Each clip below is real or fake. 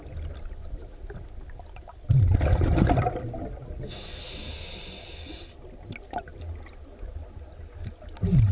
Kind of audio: real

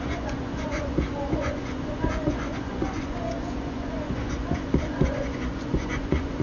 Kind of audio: fake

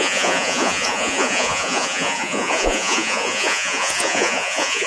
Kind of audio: fake